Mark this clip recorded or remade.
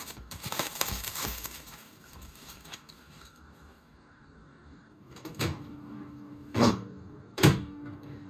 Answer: remade